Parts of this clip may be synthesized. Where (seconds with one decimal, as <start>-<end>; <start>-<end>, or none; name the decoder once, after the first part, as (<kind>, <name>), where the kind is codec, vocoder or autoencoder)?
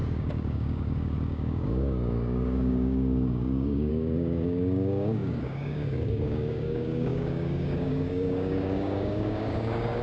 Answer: 0.0-10.0 (codec, DAC)